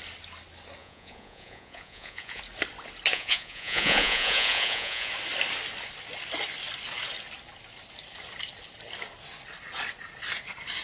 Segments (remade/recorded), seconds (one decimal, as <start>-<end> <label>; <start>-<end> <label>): 0.0-0.8 recorded; 0.8-2.4 remade; 2.4-3.1 recorded; 3.1-5.1 remade; 5.1-10.8 recorded